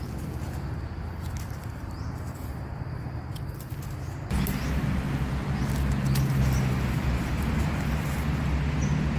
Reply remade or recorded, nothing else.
recorded